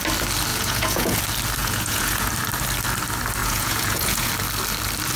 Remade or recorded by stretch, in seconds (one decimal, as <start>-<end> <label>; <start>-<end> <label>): 0.0-0.5 recorded; 0.5-1.2 remade; 1.2-1.6 recorded; 1.6-2.3 remade; 2.3-3.4 recorded; 3.4-4.3 remade; 4.3-5.2 recorded